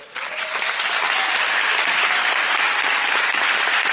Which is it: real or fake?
real